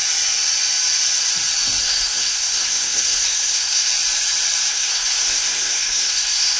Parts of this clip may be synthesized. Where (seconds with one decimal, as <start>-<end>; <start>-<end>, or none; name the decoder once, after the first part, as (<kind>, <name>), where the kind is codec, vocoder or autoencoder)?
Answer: 1.8-3.9 (codec, SNAC); 4.7-6.6